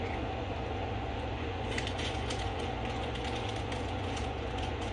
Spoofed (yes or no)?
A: yes